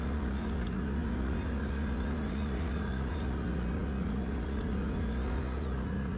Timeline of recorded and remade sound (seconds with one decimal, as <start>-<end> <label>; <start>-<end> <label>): 0.0-6.2 remade